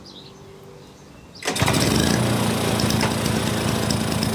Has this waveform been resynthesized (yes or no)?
no